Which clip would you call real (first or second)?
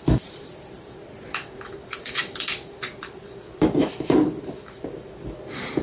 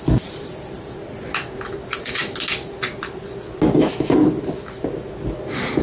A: second